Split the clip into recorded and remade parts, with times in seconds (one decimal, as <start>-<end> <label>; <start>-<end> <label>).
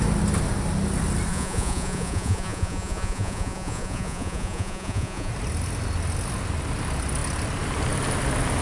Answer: 0.0-1.3 recorded; 1.3-5.3 remade; 5.3-8.6 recorded